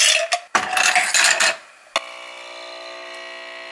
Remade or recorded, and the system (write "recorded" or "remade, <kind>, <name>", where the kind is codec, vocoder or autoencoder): recorded